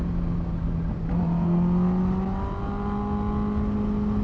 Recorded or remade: recorded